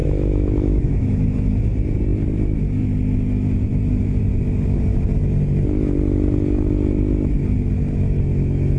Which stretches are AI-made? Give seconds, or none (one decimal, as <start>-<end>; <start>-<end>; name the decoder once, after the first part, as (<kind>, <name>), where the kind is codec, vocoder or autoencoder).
0.0-1.5 (autoencoder, DAC-VAE)